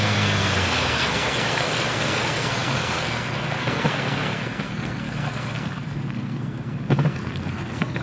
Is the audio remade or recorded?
remade